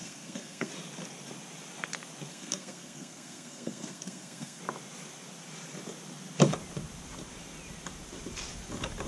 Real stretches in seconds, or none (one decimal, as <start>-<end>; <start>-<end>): 0.7-2.3; 4.6-9.1